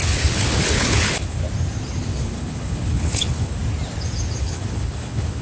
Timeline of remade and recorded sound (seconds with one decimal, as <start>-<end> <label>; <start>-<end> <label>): 0.0-1.4 remade; 1.4-2.0 recorded; 2.0-3.6 remade; 3.6-4.4 recorded; 4.4-5.4 remade